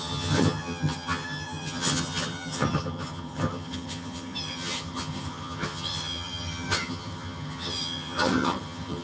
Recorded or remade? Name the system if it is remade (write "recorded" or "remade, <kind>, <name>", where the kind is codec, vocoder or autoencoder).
remade, vocoder, HiFi-GAN